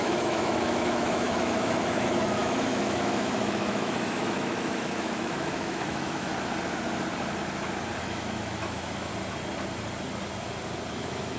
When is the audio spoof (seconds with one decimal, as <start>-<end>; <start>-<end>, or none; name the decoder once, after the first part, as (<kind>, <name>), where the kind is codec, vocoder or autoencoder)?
0.0-6.3 (autoencoder, DAC-VAE); 8.0-9.1; 10.9-11.4

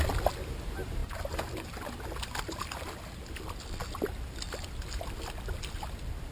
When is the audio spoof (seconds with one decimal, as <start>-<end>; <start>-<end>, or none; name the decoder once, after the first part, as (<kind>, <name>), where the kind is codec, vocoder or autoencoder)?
none

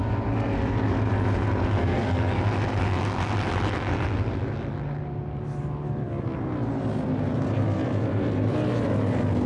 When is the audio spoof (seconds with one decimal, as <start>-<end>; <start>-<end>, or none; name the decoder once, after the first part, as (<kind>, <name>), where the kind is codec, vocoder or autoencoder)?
1.8-2.4 (codec, SNAC)

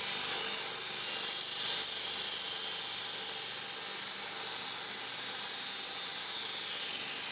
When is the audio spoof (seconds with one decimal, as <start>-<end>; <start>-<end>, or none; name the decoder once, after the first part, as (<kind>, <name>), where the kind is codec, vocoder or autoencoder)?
none

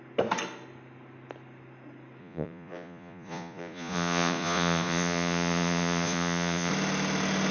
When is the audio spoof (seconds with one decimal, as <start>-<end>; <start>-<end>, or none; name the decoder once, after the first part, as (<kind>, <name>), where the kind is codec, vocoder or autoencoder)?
2.2-6.7 (vocoder, Vocos)

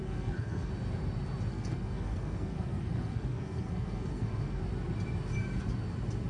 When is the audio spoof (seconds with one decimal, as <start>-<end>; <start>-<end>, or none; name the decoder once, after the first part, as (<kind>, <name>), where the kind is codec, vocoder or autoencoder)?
0.0-0.7 (codec, SNAC); 1.5-4.6